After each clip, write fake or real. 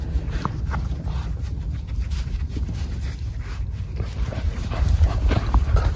fake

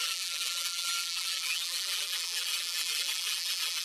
fake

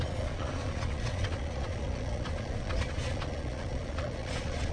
fake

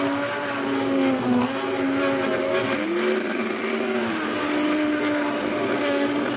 real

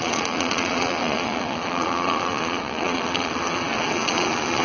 fake